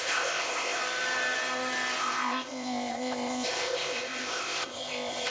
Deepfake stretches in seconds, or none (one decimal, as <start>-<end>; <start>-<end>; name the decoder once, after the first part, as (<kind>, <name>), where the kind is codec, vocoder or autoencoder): 0.0-0.8 (codec, ZipCodec); 2.0-5.3